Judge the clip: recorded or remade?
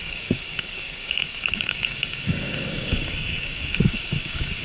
remade